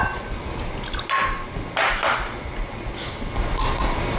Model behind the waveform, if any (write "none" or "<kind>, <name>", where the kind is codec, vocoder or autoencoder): none